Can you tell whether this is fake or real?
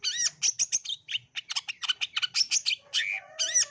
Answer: real